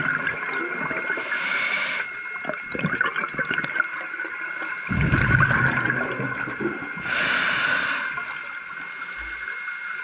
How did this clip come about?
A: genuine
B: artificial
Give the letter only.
A